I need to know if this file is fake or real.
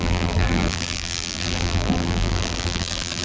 fake